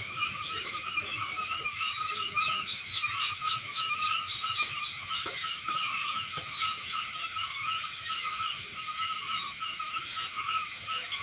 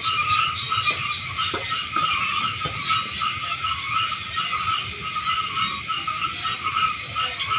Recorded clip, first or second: second